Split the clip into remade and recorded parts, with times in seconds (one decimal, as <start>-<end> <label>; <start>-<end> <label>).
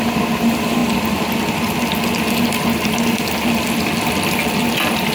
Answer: 0.0-5.1 recorded